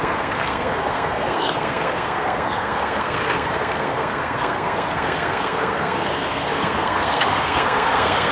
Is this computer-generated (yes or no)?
yes